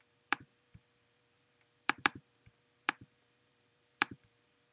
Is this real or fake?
fake